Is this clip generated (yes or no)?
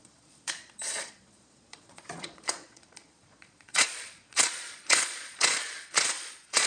yes